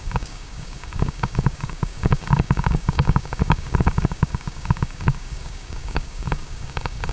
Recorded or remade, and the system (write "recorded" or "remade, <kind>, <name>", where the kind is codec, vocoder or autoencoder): remade, codec, DAC